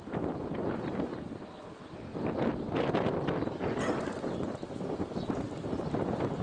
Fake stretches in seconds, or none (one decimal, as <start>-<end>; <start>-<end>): none